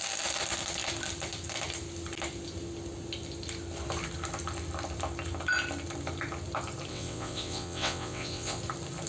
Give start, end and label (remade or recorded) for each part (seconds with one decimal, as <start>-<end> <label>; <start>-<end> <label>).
0.0-6.9 recorded; 6.9-8.6 remade; 8.6-9.1 recorded